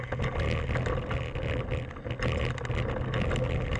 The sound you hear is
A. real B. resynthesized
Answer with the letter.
A